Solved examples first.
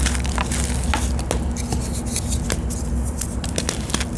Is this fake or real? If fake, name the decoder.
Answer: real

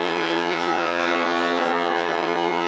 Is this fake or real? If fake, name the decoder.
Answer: fake, vocoder, HiFi-GAN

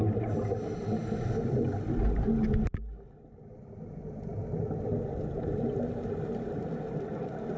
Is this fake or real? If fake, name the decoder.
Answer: real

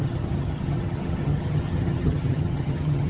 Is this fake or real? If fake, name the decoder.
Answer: fake, vocoder, HiFi-GAN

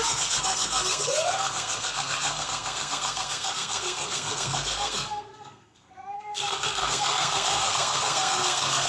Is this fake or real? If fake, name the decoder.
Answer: fake, codec, SNAC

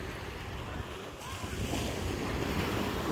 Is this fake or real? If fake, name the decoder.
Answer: real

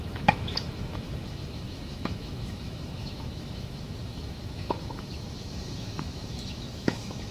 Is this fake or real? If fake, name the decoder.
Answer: fake, autoencoder, DAC-VAE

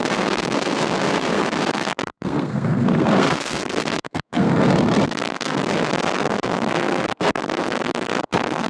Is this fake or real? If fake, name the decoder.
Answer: fake, codec, SNAC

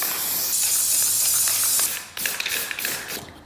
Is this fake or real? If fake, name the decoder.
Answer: real